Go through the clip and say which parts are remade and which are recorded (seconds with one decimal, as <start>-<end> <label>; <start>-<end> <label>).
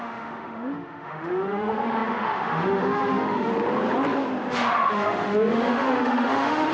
0.0-3.5 remade; 3.5-4.5 recorded; 4.5-6.7 remade